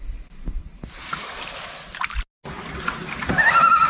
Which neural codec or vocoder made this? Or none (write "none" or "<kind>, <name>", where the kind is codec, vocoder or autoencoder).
none